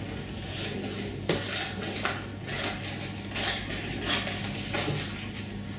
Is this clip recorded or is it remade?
recorded